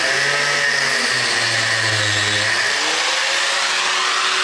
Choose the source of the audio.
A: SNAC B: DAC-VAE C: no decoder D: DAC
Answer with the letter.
C